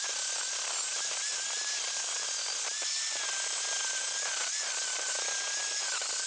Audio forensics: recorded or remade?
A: recorded